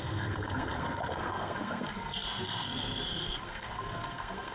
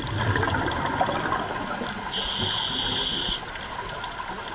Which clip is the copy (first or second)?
first